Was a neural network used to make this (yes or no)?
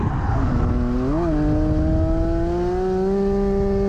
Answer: no